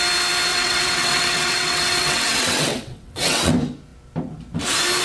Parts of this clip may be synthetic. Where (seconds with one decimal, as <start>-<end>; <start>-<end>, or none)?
0.5-3.5